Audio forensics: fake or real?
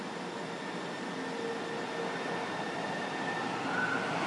real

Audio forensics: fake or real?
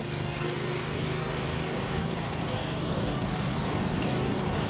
fake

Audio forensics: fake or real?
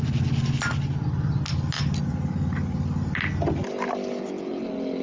real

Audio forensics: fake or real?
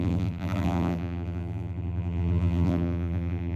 fake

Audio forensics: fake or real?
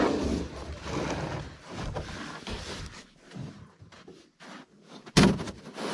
real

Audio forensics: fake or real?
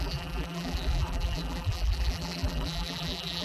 fake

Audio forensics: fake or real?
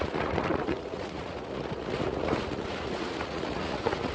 fake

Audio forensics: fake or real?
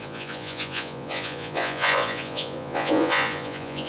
fake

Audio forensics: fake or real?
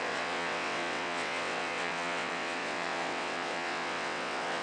fake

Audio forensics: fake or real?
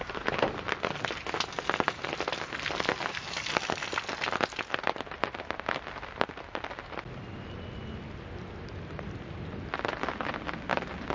real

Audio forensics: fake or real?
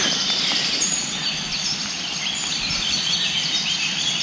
fake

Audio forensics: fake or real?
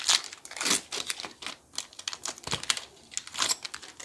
real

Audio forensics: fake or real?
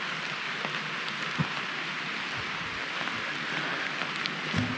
real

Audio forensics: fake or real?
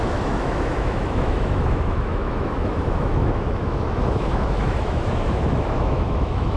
fake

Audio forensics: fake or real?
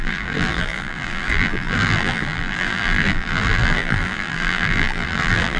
fake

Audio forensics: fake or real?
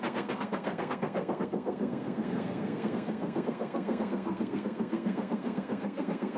fake